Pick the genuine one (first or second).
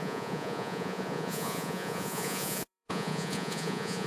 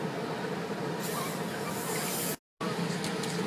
second